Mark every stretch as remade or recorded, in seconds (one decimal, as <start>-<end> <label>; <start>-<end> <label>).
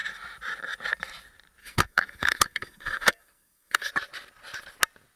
0.0-1.6 recorded; 1.6-3.9 remade; 3.9-5.2 recorded